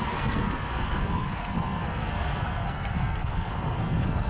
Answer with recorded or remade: remade